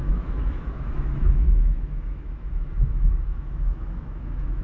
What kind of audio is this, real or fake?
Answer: fake